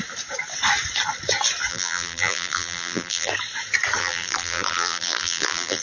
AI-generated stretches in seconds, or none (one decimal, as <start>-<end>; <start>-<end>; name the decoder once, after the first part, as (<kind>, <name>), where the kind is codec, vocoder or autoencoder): 1.7-3.3 (vocoder, BigVGAN v2); 4.0-5.8